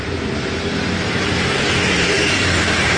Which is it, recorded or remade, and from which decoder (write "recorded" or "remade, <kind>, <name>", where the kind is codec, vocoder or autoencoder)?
remade, vocoder, BigVGAN v2